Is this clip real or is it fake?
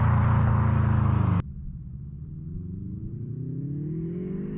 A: real